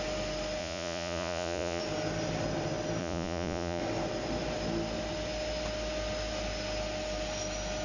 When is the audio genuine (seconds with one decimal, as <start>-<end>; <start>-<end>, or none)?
0.0-0.6; 1.8-3.0; 3.8-7.8